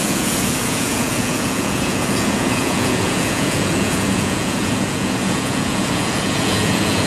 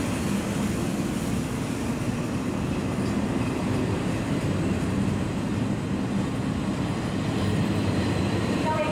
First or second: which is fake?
first